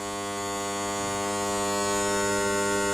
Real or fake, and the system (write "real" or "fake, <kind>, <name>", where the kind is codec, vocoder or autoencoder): real